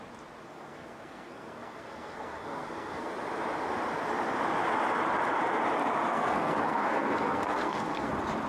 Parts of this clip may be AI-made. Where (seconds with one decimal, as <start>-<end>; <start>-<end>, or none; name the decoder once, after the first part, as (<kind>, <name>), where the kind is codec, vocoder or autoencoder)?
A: 0.4-3.1 (codec, SNAC); 6.1-8.1